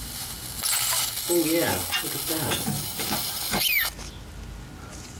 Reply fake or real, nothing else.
real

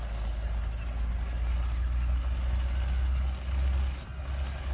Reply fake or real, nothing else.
real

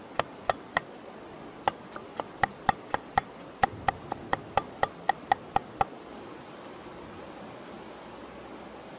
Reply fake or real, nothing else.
real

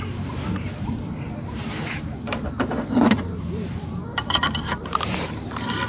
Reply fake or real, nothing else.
fake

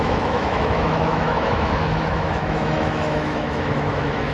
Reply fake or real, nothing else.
fake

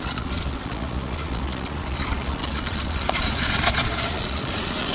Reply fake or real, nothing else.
fake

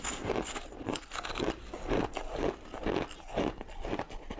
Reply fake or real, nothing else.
real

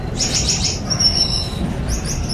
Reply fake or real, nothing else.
fake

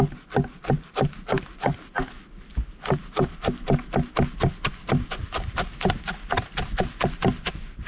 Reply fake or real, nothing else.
real